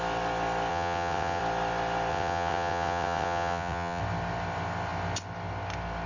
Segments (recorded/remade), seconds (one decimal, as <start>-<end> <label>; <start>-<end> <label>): 0.0-0.7 recorded; 0.7-1.4 remade; 1.4-2.1 recorded; 2.1-4.0 remade; 4.0-6.1 recorded